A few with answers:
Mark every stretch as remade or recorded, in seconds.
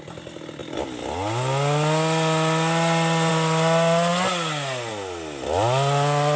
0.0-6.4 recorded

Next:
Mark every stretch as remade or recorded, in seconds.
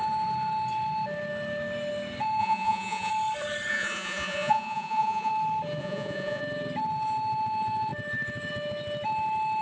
0.0-2.4 recorded; 2.4-3.1 remade; 3.1-3.7 recorded; 3.7-5.3 remade; 5.3-5.8 recorded; 5.8-6.4 remade; 6.4-9.6 recorded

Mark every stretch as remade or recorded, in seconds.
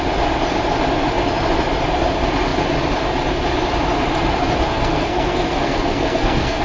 0.0-4.7 recorded; 4.7-6.6 remade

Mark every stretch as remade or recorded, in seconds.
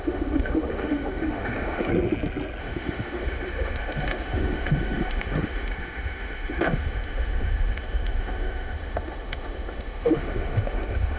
0.0-1.9 remade; 1.9-2.6 recorded; 2.6-11.2 remade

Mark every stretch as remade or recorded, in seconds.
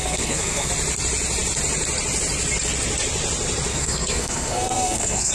0.0-0.7 remade; 0.7-3.7 recorded; 3.7-5.3 remade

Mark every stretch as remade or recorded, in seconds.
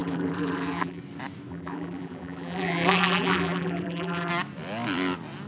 0.0-1.0 remade; 1.0-1.5 recorded; 1.5-4.3 remade; 4.3-5.5 recorded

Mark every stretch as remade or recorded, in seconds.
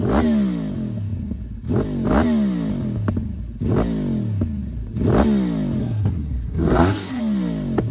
0.0-5.8 recorded; 5.8-7.2 remade; 7.2-7.9 recorded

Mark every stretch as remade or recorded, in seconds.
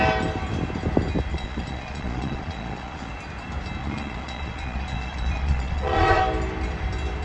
0.0-1.3 recorded; 1.3-3.1 remade; 3.1-3.8 recorded; 3.8-6.2 remade; 6.2-7.2 recorded